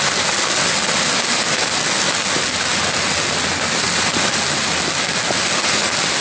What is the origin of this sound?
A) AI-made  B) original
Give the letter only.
B